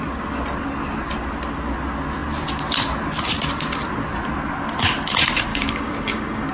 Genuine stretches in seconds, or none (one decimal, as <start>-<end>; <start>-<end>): 0.0-5.5